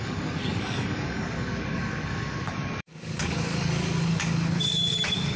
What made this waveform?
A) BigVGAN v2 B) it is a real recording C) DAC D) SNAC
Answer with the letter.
C